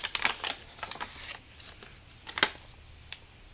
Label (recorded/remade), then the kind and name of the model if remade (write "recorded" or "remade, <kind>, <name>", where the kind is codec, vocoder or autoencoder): recorded